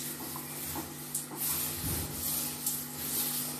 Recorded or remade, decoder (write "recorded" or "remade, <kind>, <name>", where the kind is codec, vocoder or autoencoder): recorded